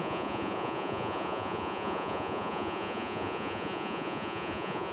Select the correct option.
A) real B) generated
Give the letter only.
B